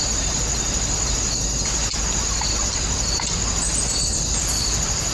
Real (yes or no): yes